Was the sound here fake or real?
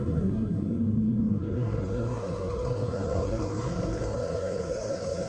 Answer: fake